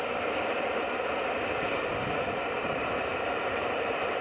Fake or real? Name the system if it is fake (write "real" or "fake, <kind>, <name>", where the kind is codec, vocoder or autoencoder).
fake, vocoder, BigVGAN v2